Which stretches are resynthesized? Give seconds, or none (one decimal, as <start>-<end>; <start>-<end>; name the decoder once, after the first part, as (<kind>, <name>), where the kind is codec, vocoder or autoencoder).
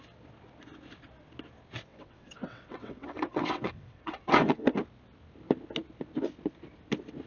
1.9-4.8 (vocoder, WaveNeXt)